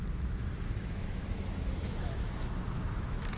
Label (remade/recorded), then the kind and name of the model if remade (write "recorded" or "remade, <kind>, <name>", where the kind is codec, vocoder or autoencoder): remade, autoencoder, DAC-VAE